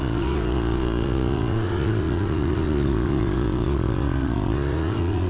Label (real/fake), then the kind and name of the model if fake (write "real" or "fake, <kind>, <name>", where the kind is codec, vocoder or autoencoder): fake, vocoder, Vocos